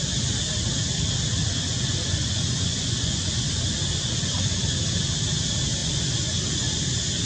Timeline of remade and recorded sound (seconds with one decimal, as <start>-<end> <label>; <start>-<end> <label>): 0.0-1.4 recorded; 1.4-4.6 remade; 4.6-5.8 recorded; 5.8-6.8 remade; 6.8-7.3 recorded